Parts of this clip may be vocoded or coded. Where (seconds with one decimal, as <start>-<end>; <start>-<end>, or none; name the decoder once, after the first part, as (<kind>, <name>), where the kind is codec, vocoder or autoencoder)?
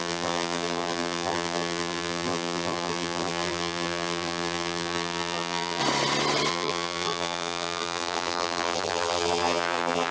0.0-5.8 (vocoder, BigVGAN v2); 6.5-10.1